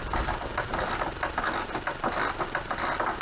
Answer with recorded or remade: recorded